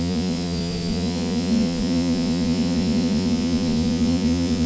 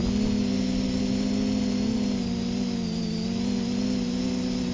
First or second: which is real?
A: second